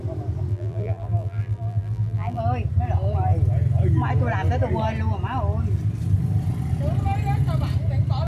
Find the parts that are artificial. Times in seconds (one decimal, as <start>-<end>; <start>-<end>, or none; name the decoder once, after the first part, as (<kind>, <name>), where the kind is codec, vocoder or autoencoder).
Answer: 0.5-2.4 (vocoder, BigVGAN v2)